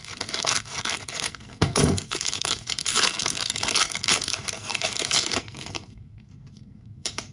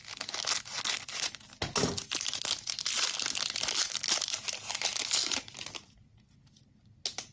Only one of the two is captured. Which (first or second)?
second